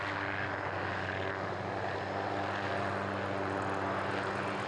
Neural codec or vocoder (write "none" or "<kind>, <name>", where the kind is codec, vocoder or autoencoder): none